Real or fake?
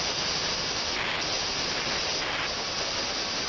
real